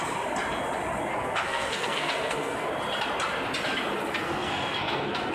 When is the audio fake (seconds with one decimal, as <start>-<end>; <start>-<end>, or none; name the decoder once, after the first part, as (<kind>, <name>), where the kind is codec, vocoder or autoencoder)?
1.1-2.7 (codec, SNAC); 4.1-5.3

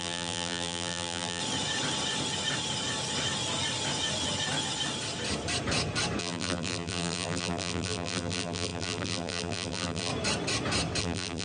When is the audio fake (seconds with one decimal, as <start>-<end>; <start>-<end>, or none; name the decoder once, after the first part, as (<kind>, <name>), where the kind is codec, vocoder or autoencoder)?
0.0-1.4 (vocoder, BigVGAN v2); 6.2-10.1; 11.0-11.4